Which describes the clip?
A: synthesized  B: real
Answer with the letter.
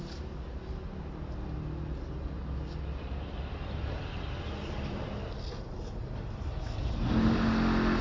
B